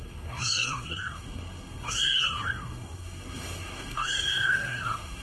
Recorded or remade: remade